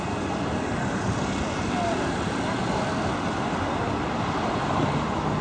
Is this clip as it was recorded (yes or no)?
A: yes